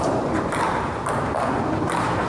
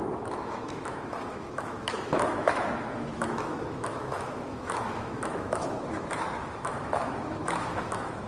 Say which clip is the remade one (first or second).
second